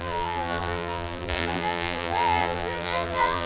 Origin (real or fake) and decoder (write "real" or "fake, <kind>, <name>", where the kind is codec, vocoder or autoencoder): fake, vocoder, BigVGAN v2